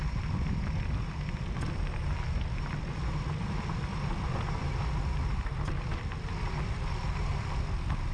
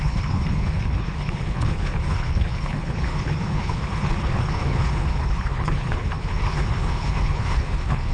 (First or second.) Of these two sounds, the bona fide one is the first